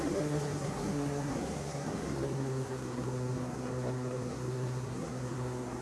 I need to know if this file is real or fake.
fake